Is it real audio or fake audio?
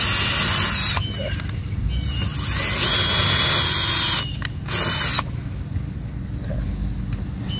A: real